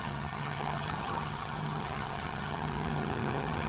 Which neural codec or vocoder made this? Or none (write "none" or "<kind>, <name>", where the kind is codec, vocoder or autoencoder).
vocoder, HiFi-GAN